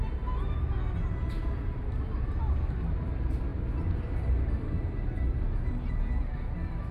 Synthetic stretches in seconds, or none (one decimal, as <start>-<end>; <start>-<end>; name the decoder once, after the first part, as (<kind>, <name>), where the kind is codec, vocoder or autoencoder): none